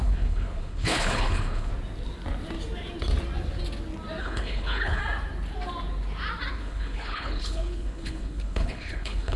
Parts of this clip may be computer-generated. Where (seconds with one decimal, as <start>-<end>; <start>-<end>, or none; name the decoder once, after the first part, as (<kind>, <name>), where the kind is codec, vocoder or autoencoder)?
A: 0.0-1.7 (codec, HILCodec); 4.2-5.0; 6.5-9.4